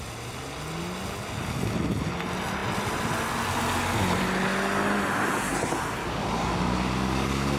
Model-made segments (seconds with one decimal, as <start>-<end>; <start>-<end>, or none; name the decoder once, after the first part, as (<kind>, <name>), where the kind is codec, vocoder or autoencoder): 6.0-7.6 (codec, DAC)